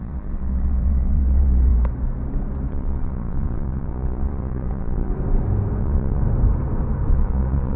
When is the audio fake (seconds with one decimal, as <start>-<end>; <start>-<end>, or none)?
0.0-1.7; 2.7-5.1; 5.8-6.2; 7.1-7.8